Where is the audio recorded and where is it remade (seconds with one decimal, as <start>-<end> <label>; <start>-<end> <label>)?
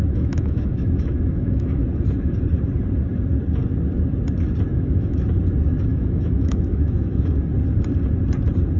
0.0-1.8 remade; 1.8-4.7 recorded; 4.7-5.2 remade; 5.2-5.9 recorded; 5.9-7.3 remade; 7.3-8.8 recorded